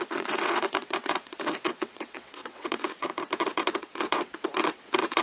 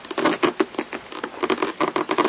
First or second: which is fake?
first